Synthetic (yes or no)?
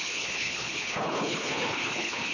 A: yes